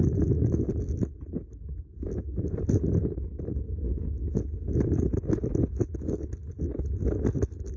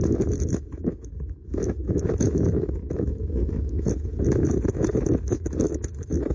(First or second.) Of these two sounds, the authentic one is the first